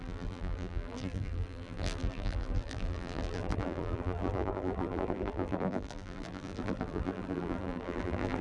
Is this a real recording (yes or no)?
no